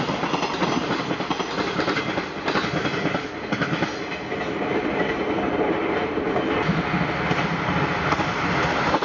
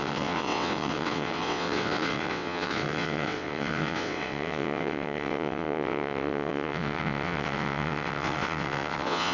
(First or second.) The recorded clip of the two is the first